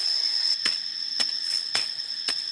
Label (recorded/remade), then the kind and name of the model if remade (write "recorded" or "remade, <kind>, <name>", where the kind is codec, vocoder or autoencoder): remade, vocoder, WaveNeXt